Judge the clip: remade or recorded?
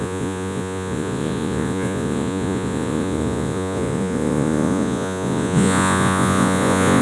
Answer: remade